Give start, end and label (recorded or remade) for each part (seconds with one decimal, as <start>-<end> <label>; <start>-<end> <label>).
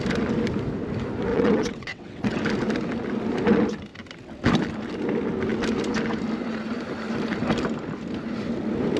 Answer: 0.0-1.3 recorded; 1.3-2.4 remade; 2.4-9.0 recorded